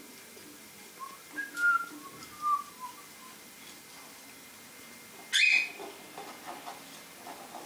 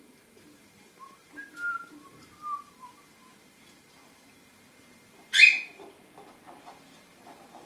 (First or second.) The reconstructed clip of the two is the second